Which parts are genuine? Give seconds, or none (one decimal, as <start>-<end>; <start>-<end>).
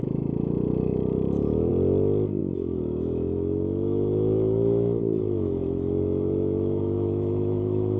1.7-2.4